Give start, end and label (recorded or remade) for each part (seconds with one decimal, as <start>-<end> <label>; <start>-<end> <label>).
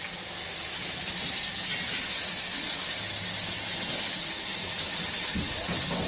0.0-6.1 recorded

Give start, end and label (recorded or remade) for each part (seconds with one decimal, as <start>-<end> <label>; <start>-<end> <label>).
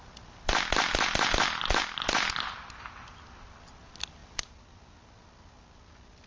0.0-6.3 recorded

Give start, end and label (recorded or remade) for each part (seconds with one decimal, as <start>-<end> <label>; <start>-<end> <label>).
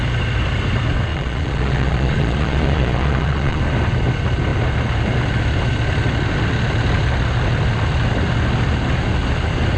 0.0-1.1 recorded; 1.1-3.6 remade; 3.6-9.8 recorded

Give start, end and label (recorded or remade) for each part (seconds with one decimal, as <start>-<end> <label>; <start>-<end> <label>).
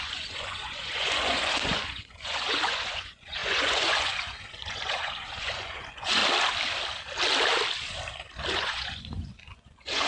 0.0-6.2 remade; 6.2-8.5 recorded; 8.5-10.1 remade